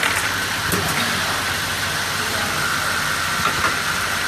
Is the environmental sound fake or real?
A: real